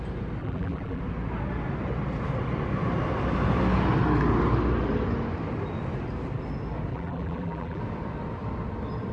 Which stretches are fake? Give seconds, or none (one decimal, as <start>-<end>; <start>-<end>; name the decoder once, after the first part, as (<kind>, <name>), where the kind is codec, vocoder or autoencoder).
0.4-1.0 (vocoder, BigVGAN v2); 6.9-7.8